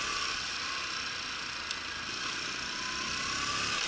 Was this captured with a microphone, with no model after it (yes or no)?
yes